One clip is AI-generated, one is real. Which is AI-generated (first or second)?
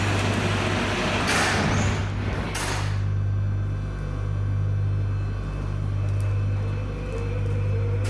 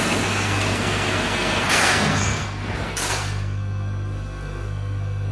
second